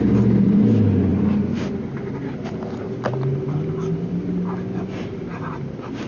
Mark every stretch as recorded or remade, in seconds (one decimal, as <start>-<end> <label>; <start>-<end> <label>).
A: 0.0-6.1 recorded

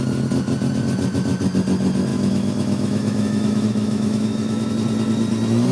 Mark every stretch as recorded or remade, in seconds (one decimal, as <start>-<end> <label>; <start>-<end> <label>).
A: 0.0-2.1 recorded; 2.1-4.7 remade; 4.7-5.7 recorded

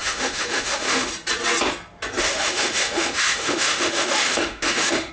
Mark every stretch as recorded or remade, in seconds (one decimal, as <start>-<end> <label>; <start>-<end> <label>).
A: 0.0-1.1 remade; 1.1-2.2 recorded; 2.2-5.1 remade

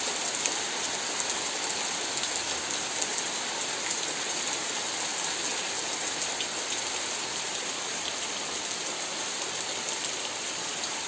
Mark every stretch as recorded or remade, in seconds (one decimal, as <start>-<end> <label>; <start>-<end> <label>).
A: 0.0-11.1 recorded